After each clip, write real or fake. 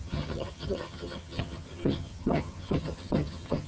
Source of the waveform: fake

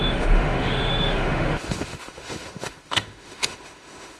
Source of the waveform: fake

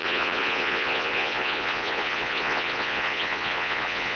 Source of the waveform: fake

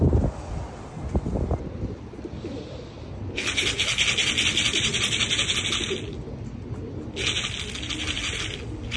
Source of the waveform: real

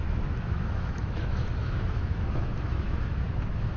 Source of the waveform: fake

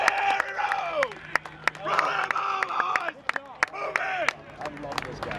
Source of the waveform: real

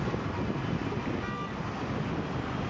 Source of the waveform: real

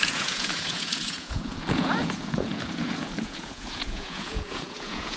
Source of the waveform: fake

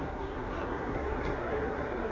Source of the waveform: fake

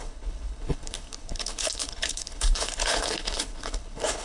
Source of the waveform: fake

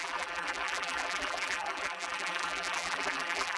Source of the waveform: fake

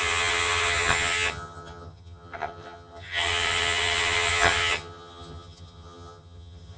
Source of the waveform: fake